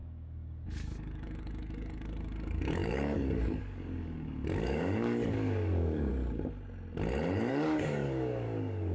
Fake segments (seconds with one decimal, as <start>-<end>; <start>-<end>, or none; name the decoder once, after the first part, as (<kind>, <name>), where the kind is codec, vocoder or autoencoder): 0.0-6.1 (codec, DAC); 7.5-8.9

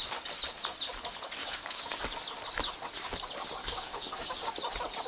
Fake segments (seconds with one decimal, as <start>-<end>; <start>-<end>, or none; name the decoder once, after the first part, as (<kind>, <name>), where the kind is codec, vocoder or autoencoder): 1.4-2.0 (codec, DAC); 3.6-4.5

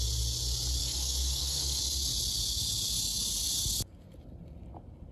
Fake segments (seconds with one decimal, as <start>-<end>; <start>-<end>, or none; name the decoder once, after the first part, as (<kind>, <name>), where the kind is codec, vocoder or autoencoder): 0.8-1.8 (codec, DAC)

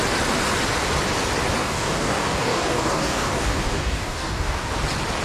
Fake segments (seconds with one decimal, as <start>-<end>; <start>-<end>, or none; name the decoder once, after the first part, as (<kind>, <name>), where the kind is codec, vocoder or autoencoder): 1.6-4.7 (codec, DAC)

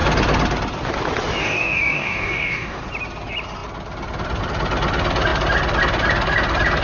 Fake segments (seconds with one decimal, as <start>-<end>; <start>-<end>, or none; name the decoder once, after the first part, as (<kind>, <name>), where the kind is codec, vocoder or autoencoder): 1.4-2.8 (codec, DAC)

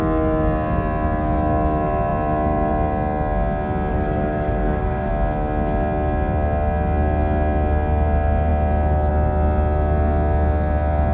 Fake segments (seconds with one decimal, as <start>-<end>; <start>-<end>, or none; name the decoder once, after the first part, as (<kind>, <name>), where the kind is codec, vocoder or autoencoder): 3.9-5.1 (codec, DAC)

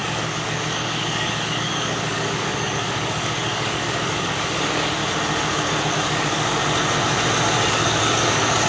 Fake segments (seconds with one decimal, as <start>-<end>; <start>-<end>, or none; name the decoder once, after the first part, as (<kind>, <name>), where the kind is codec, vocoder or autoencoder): 0.0-5.0 (codec, DAC); 5.9-6.6; 7.7-8.7

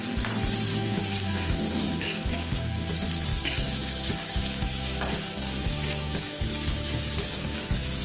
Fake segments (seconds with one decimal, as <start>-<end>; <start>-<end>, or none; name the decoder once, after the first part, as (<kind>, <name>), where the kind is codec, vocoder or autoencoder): 0.7-2.9 (codec, DAC); 3.3-8.0